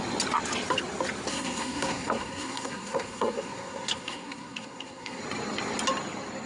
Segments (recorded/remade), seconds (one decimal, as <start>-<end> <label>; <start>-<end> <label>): 0.0-1.3 recorded; 1.3-5.2 remade; 5.2-6.5 recorded